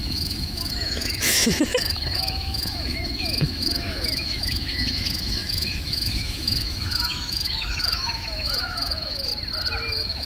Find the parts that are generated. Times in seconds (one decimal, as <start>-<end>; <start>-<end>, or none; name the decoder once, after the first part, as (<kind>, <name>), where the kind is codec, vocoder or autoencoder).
0.0-9.3 (autoencoder, DAC-VAE); 9.9-10.3